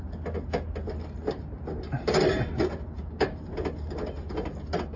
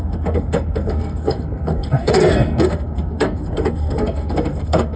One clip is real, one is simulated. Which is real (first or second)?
first